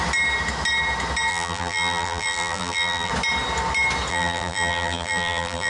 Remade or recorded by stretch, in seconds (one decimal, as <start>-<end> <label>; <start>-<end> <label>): 0.0-1.3 recorded; 1.3-3.1 remade; 3.1-4.1 recorded; 4.1-5.7 remade